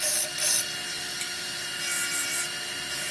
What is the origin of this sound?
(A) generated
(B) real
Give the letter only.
B